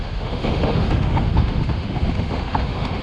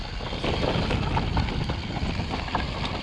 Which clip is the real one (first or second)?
second